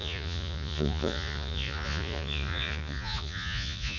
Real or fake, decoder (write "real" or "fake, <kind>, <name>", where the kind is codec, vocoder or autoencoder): fake, vocoder, Vocos